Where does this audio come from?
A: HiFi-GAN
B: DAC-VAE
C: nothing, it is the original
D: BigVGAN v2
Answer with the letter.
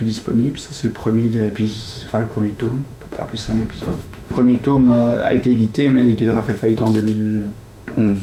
B